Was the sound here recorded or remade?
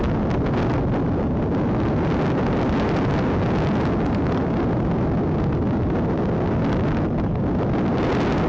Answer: recorded